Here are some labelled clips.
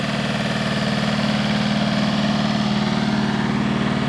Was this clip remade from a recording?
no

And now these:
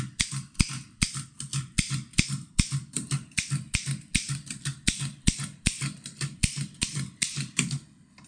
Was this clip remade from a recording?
no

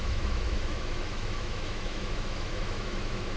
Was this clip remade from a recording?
yes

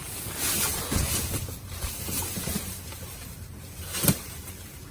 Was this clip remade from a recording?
yes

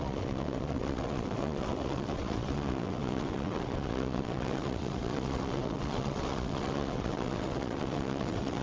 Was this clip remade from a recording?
yes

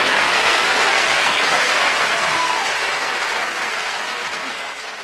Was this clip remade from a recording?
yes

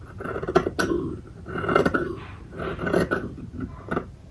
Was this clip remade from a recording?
no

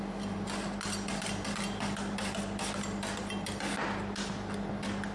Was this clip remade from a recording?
no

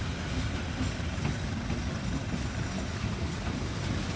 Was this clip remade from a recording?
no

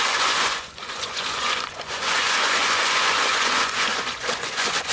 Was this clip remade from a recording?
yes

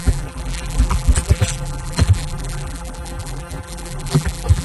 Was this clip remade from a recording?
yes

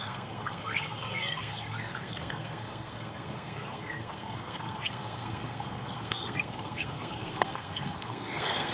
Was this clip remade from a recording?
yes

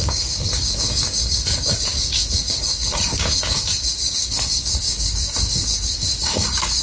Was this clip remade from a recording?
yes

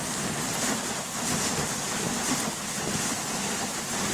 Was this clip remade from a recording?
no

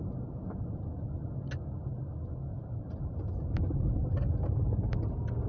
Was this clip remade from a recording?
no